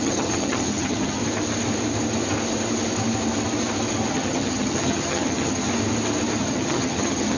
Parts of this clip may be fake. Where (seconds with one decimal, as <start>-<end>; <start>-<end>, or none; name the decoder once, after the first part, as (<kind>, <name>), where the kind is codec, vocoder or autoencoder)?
0.0-1.2 (vocoder, HiFi-GAN); 4.1-5.7; 6.4-7.4